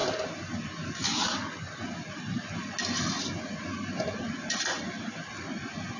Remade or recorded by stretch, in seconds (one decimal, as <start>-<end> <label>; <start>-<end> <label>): 0.0-6.0 recorded